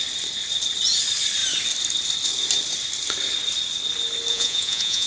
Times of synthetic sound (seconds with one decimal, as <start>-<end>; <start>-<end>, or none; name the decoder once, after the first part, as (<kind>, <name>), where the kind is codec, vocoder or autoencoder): 4.3-5.1 (vocoder, Vocos)